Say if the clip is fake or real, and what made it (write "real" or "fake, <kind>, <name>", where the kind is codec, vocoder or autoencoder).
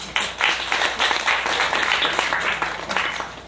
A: real